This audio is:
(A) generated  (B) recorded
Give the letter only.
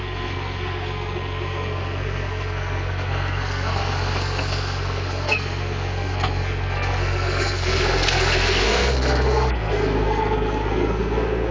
A